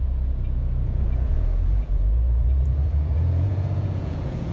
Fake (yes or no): yes